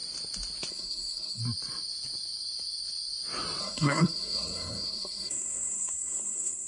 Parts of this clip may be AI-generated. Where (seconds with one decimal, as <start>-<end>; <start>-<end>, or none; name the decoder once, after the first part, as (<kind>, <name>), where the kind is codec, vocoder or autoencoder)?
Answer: 0.7-1.4 (codec, SNAC); 3.6-6.7